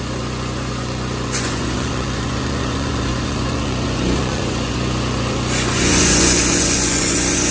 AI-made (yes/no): yes